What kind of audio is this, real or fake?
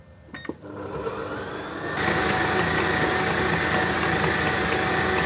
real